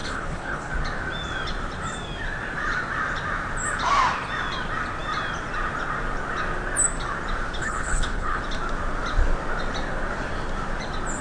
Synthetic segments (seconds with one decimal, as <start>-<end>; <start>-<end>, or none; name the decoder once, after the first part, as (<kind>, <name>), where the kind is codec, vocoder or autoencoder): 0.0-0.7 (codec, HILCodec); 7.6-8.4